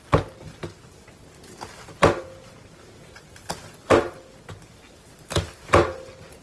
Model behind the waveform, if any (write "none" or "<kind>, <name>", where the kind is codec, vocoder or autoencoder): none